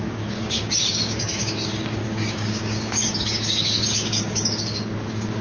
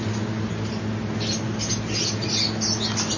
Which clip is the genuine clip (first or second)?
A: second